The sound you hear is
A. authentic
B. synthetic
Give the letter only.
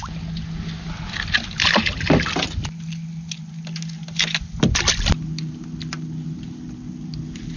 A